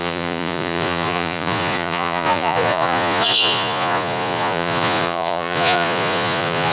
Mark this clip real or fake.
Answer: fake